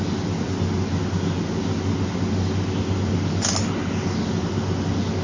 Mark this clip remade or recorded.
recorded